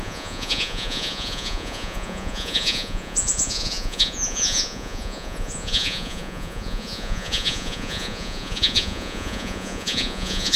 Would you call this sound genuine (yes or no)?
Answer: no